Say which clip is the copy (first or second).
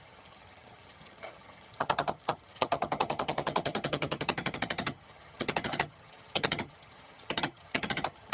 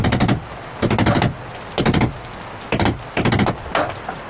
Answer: first